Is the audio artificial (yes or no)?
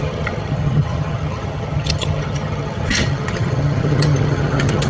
yes